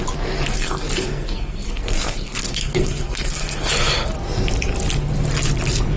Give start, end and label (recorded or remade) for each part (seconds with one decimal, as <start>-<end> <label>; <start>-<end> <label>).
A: 0.0-0.5 recorded; 0.5-3.7 remade; 3.7-6.0 recorded